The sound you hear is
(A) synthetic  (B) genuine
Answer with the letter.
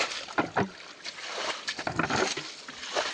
B